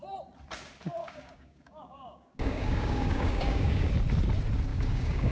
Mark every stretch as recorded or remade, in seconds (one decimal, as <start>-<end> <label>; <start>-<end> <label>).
0.0-1.0 recorded; 1.0-3.9 remade; 3.9-4.7 recorded; 4.7-5.3 remade